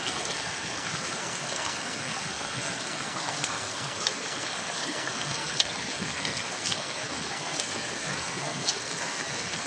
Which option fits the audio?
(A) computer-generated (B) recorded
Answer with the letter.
A